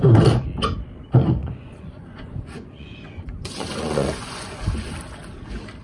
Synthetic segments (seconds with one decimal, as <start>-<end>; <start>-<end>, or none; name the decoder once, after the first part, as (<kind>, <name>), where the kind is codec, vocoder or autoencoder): 1.4-4.9 (vocoder, Vocos)